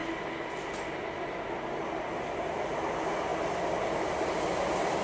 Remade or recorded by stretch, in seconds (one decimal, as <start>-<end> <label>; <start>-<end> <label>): 0.0-5.0 recorded